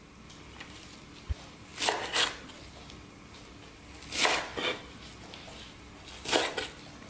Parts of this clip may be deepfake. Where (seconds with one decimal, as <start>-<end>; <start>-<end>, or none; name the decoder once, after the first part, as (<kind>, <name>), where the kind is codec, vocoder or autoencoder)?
none